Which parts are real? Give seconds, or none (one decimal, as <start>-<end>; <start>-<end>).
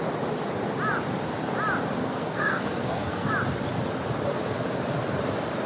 0.0-2.0; 3.3-5.7